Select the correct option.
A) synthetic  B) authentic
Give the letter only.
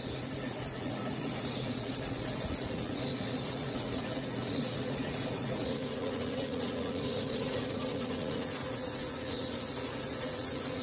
A